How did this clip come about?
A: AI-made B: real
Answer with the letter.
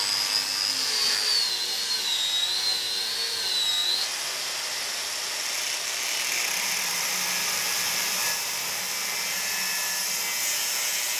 B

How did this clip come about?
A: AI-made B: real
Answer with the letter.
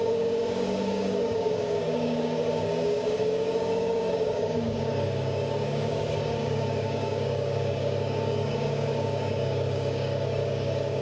A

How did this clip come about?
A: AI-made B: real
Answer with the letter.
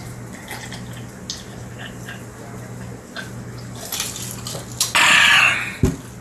B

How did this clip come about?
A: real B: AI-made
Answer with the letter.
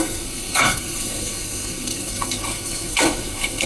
B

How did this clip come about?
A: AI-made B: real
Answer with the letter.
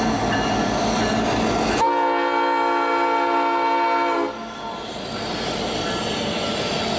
B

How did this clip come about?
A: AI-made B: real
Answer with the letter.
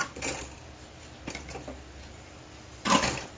B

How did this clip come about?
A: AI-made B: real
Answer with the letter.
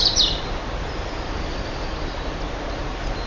B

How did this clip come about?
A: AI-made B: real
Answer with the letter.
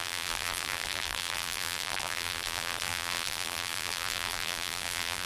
A